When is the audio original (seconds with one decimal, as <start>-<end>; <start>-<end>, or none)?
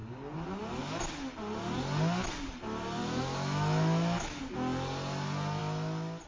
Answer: 0.0-3.0; 4.4-6.3